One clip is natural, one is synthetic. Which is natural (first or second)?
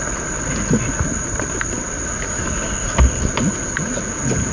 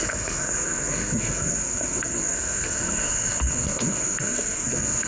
first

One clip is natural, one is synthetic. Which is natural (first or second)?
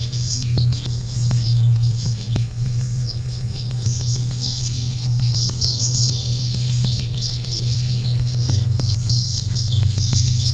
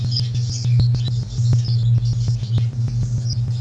second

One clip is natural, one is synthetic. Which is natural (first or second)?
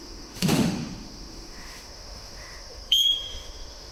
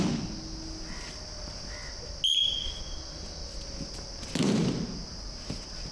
second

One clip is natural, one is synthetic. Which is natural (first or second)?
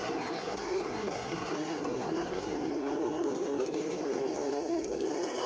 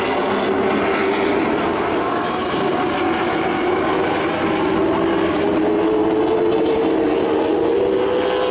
second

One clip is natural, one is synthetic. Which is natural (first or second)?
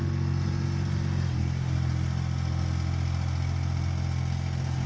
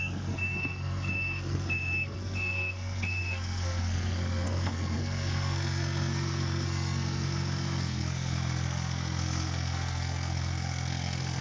first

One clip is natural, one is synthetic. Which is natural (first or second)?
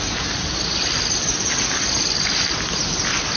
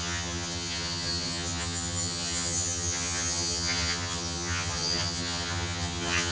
first